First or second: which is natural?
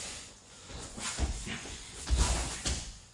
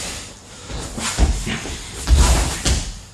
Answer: second